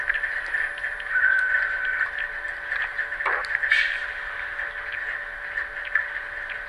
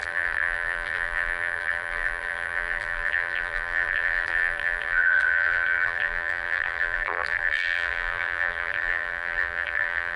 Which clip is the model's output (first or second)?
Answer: second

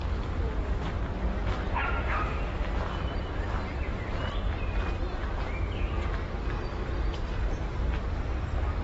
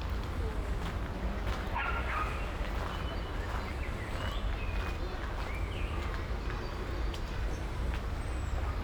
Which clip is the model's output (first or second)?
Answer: first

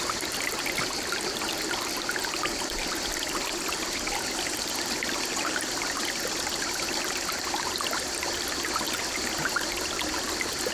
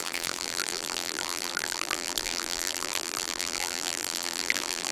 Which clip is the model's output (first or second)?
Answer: second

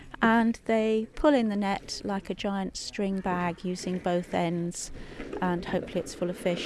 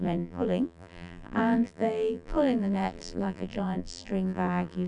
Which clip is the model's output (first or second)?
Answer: second